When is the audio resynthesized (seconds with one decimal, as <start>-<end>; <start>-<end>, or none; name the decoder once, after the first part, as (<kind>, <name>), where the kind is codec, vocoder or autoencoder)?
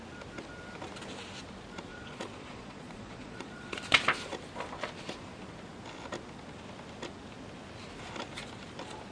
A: 1.9-3.8 (vocoder, Vocos)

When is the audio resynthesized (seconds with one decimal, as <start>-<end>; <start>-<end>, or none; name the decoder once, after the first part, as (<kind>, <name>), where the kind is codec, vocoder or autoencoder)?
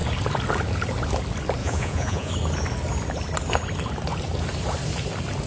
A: 1.6-2.3 (vocoder, Vocos)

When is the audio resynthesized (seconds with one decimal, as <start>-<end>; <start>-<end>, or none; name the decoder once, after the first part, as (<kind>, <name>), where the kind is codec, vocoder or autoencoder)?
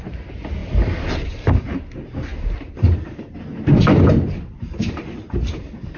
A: none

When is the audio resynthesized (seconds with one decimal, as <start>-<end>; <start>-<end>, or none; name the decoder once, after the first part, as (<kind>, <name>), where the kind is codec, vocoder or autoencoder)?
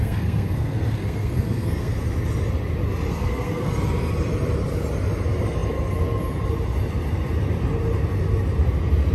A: 0.0-1.9 (codec, SNAC); 3.1-3.7